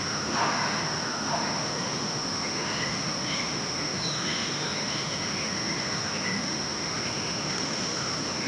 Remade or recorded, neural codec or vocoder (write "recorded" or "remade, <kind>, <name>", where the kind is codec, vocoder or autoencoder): remade, autoencoder, DAC-VAE